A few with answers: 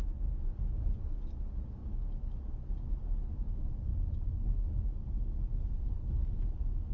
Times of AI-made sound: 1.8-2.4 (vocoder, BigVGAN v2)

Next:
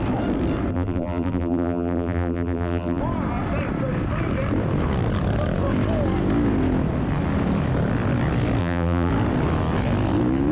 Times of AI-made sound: 0.7-3.0 (vocoder, BigVGAN v2); 8.6-9.1

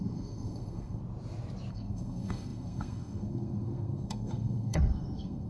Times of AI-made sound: 0.0-1.0 (codec, SNAC); 1.7-5.5

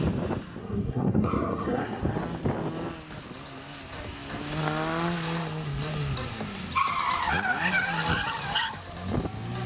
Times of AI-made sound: 0.6-2.0 (codec, SNAC)

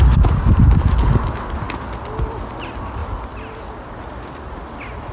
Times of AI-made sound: none

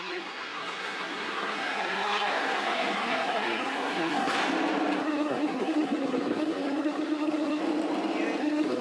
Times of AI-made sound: 0.0-4.4 (codec, SNAC); 5.0-7.6; 8.4-8.8

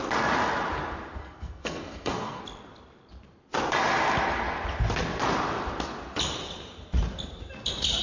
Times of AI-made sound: 1.2-2.4 (codec, SNAC)